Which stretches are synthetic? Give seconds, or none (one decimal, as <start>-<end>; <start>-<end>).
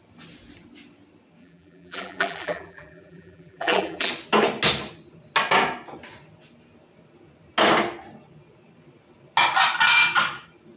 1.4-4.1